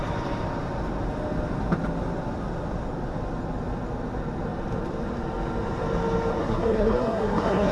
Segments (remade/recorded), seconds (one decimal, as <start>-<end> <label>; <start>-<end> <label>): 0.0-6.4 recorded; 6.4-7.7 remade